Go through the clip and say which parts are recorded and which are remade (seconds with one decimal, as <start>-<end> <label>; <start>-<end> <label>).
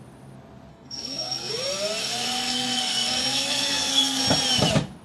0.0-0.7 recorded; 0.7-1.5 remade; 1.5-2.0 recorded; 2.0-4.2 remade; 4.2-5.0 recorded